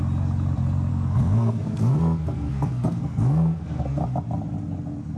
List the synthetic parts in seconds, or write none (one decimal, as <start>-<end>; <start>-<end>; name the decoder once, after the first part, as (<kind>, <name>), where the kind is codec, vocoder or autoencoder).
0.9-4.0 (codec, SNAC)